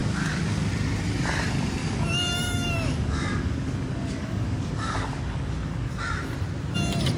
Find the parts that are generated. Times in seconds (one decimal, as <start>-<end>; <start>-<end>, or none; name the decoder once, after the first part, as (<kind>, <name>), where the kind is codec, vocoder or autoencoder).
0.0-0.7 (codec, DAC); 1.8-6.1